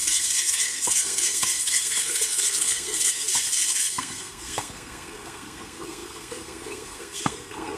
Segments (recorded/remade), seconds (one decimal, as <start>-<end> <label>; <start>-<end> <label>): 0.0-7.8 remade